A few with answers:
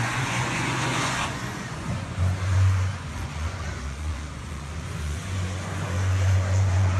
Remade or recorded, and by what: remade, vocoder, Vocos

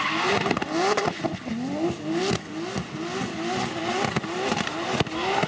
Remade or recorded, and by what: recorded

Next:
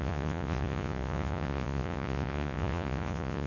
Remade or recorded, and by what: remade, vocoder, Vocos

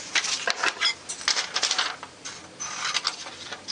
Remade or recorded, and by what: recorded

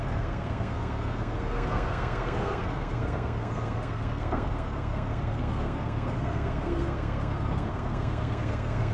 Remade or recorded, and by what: remade, codec, SNAC